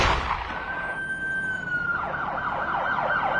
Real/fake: real